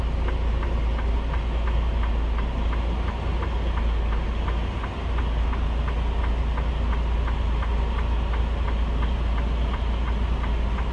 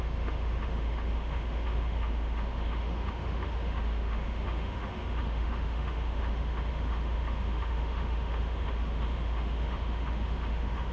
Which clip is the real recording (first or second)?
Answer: first